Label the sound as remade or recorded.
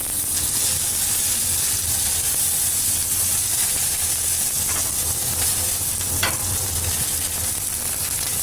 recorded